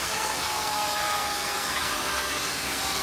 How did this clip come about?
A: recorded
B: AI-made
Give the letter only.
B